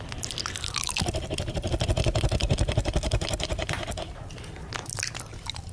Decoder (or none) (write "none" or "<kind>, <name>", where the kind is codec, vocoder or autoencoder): none